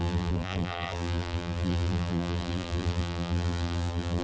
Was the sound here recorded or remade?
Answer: remade